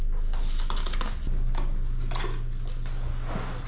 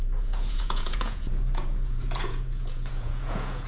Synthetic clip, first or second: second